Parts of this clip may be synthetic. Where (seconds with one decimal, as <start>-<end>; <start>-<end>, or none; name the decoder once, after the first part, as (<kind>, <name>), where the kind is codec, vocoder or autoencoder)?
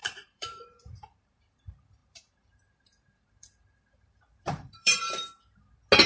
0.0-1.6 (vocoder, BigVGAN v2); 2.0-5.0